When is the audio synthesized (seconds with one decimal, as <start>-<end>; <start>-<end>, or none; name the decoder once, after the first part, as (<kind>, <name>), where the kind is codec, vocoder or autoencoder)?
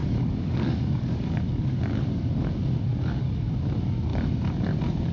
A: 0.0-2.2 (codec, DAC); 2.9-3.5